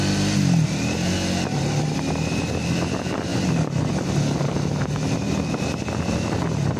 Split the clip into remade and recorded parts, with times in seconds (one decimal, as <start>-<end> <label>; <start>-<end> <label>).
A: 0.0-6.8 recorded